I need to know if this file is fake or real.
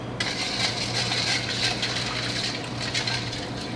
real